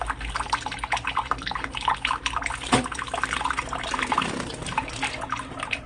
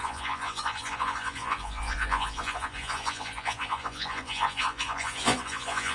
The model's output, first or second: second